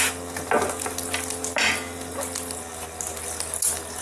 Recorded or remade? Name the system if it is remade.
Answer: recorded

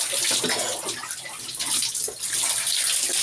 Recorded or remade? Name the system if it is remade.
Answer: recorded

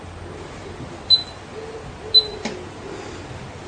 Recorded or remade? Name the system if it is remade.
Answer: recorded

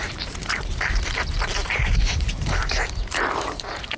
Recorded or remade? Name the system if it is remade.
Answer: remade, vocoder, BigVGAN v2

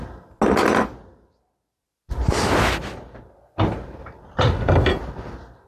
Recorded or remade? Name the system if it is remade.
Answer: recorded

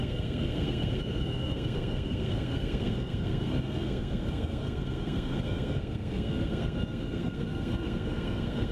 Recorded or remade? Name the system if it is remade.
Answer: remade, codec, SNAC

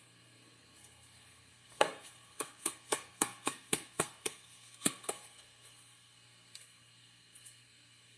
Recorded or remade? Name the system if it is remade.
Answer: remade, codec, SNAC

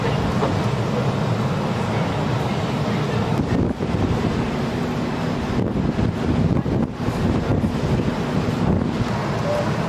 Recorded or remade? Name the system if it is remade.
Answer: recorded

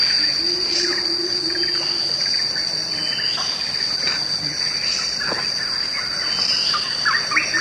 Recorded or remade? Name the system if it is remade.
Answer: recorded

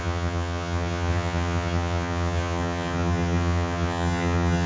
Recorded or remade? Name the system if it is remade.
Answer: remade, vocoder, HiFi-GAN